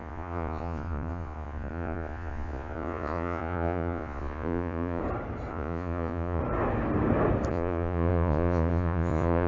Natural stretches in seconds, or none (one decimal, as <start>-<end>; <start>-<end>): 5.0-5.5; 6.4-7.5